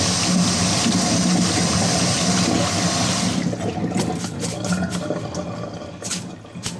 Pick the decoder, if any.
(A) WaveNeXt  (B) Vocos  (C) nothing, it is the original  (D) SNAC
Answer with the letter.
C